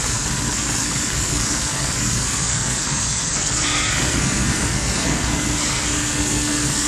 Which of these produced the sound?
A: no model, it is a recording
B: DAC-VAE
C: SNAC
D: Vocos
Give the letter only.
C